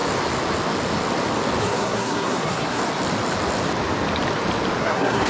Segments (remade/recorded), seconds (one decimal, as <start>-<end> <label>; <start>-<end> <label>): 0.0-1.6 recorded; 1.6-2.8 remade; 2.8-4.8 recorded; 4.8-5.3 remade